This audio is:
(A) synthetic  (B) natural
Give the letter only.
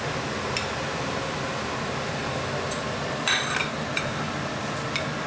B